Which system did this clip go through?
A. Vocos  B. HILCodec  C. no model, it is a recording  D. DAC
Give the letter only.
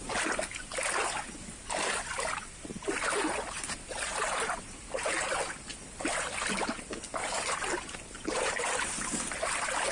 C